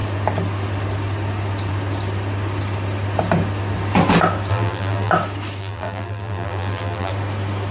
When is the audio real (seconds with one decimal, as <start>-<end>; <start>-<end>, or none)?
0.0-4.5; 5.1-5.6; 7.1-7.7